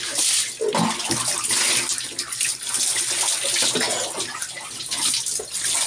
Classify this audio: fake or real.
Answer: real